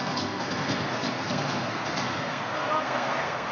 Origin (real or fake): fake